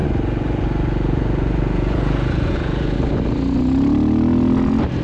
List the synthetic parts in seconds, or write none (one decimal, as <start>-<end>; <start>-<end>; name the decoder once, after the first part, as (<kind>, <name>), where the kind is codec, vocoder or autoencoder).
0.0-3.0 (vocoder, Vocos)